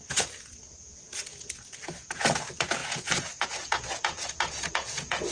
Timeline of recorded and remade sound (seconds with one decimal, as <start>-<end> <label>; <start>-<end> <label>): 0.0-5.3 remade